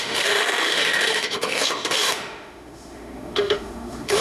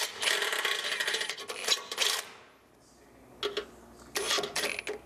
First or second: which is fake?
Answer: first